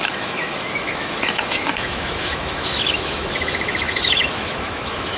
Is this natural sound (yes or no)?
no